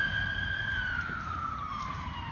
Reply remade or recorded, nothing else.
remade